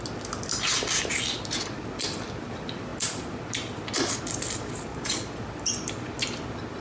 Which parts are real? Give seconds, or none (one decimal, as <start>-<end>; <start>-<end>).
0.0-4.9; 5.4-6.8